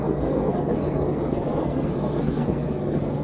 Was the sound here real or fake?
fake